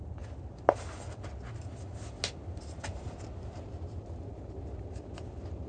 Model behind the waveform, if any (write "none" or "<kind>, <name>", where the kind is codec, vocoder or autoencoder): none